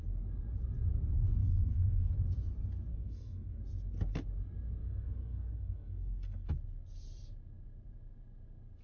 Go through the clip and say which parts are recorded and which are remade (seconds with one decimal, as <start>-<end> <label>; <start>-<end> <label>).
0.0-1.4 recorded; 1.4-2.1 remade; 2.1-2.9 recorded; 2.9-3.6 remade; 3.6-4.8 recorded; 4.8-6.5 remade; 6.5-8.8 recorded